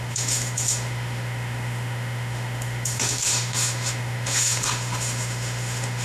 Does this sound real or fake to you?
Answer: fake